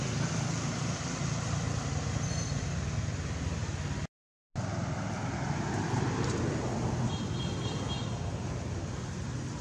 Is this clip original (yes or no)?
yes